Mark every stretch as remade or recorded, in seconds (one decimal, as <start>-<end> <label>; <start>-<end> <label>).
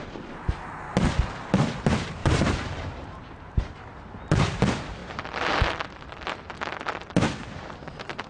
0.0-2.2 recorded; 2.2-3.1 remade; 3.1-8.3 recorded